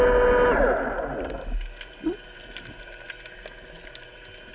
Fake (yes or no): no